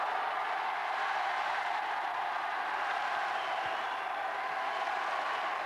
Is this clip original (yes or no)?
yes